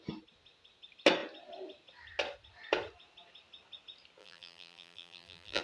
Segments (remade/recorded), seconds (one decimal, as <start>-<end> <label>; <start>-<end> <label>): 0.0-4.2 recorded; 4.2-5.6 remade